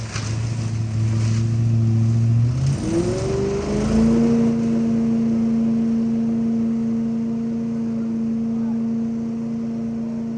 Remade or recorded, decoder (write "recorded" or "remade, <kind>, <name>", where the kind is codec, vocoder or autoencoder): recorded